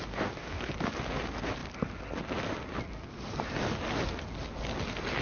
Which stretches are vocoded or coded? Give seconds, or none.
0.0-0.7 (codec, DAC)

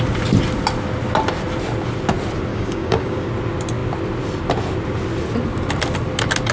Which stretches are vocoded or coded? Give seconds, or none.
2.5-3.3 (codec, DAC)

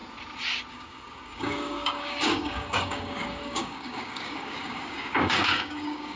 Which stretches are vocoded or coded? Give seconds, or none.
0.7-6.2 (codec, DAC)

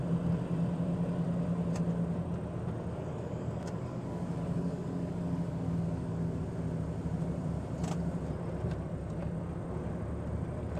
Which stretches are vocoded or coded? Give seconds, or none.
2.9-6.4 (codec, DAC)

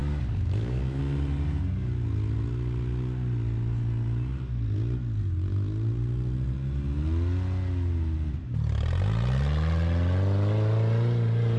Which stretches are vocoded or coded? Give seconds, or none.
0.0-1.0 (codec, DAC)

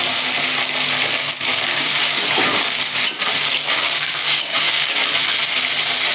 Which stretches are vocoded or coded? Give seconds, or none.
2.0-2.8 (codec, DAC); 3.4-5.1

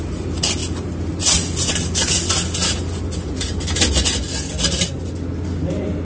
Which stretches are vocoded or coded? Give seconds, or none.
none